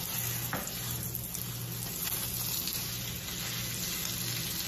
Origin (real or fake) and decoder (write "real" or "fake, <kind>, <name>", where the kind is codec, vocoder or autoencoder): real